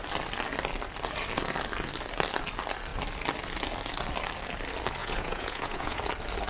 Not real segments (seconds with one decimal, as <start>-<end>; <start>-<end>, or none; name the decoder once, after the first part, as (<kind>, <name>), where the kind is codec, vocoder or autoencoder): 5.0-6.0 (vocoder, Vocos)